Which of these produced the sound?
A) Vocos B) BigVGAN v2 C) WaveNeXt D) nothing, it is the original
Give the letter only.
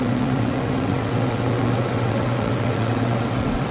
C